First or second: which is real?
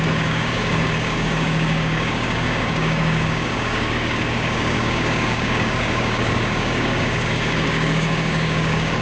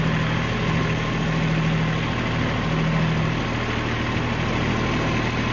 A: second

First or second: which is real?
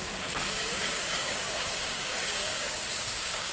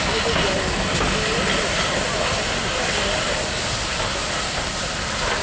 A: second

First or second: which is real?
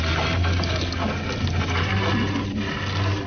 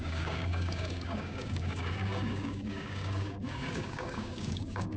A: first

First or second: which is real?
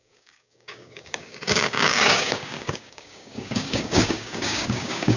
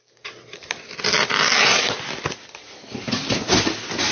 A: second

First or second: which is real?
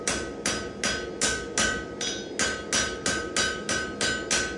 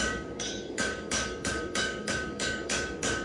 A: first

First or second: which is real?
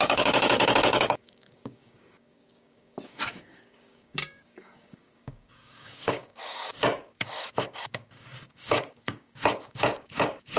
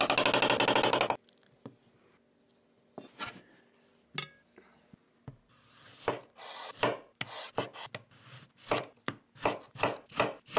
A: second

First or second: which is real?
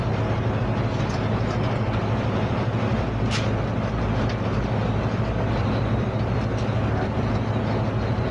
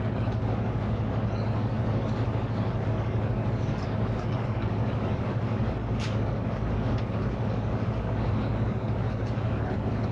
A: first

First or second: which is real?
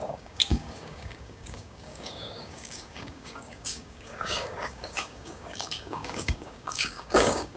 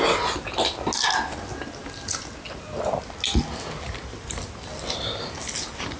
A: second